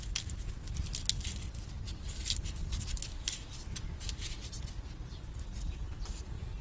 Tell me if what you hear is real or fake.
real